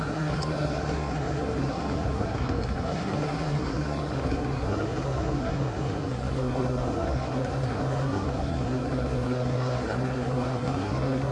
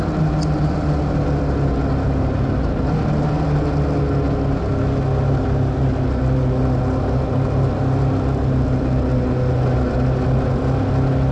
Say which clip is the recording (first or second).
second